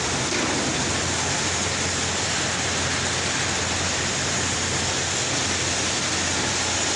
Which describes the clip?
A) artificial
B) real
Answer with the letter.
B